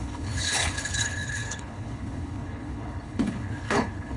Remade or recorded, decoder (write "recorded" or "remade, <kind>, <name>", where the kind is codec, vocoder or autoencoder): remade, codec, HILCodec